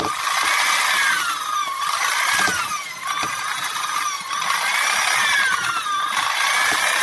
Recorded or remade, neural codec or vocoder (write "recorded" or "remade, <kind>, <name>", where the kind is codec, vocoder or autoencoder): recorded